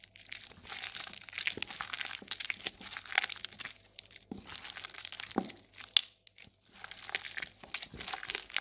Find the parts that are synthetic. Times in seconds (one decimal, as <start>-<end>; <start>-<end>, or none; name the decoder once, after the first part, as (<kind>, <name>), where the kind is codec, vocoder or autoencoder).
none